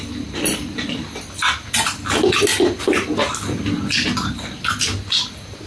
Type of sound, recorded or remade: recorded